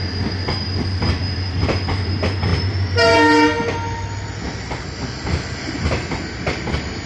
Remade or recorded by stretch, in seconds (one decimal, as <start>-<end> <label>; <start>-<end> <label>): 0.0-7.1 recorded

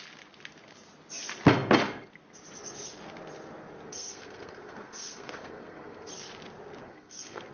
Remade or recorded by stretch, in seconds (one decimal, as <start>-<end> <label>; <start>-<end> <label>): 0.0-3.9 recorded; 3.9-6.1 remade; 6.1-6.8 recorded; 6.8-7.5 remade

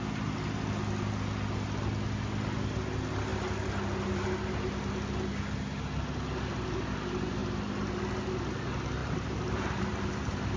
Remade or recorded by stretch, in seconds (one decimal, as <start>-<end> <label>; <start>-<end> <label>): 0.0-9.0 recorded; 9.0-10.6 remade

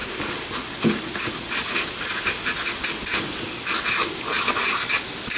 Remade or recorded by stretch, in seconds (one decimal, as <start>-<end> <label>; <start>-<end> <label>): 0.0-5.4 recorded